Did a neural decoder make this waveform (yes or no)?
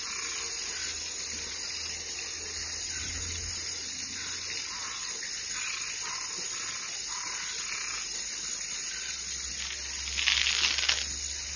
no